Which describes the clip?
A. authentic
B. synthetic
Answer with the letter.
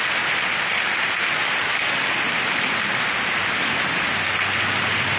A